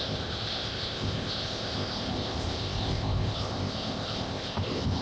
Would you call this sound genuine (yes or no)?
no